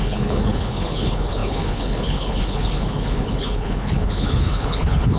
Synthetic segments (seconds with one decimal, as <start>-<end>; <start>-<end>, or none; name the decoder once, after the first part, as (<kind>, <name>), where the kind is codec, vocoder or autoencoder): 0.0-5.2 (codec, HILCodec)